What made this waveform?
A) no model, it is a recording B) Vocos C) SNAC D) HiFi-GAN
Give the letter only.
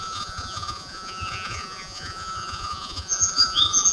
B